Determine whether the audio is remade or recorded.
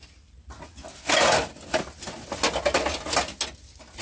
recorded